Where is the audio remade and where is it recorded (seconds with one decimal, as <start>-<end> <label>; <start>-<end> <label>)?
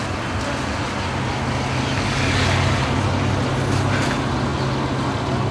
0.0-5.5 recorded